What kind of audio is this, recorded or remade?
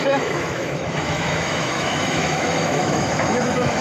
remade